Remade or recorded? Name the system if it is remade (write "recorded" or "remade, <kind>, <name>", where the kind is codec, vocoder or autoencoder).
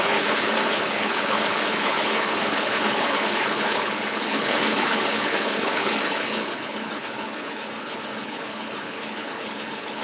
remade, codec, HILCodec